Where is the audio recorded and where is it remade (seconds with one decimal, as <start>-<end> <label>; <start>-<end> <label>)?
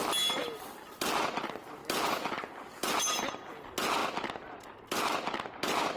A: 0.0-6.0 recorded